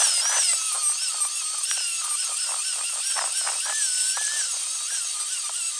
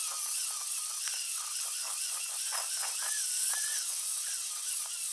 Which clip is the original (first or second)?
first